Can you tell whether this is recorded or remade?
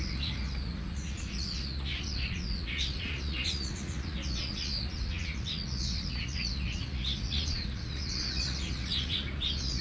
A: remade